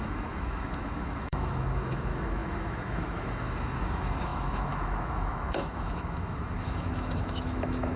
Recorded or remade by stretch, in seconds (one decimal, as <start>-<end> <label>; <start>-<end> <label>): 0.0-8.0 remade